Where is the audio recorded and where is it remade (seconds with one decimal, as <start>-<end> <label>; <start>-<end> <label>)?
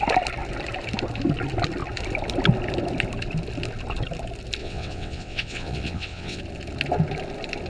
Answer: 0.0-4.6 recorded; 4.6-6.4 remade; 6.4-7.7 recorded